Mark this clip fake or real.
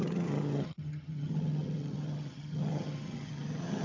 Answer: fake